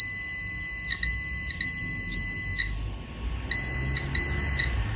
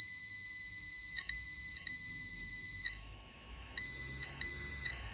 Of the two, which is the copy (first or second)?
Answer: second